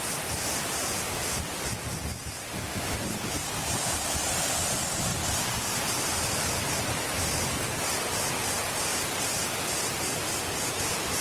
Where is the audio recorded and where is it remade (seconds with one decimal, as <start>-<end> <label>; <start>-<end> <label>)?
0.0-5.1 recorded; 5.1-9.0 remade; 9.0-11.2 recorded